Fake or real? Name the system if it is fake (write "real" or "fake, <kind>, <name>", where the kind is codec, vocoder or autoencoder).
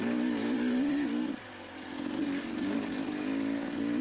real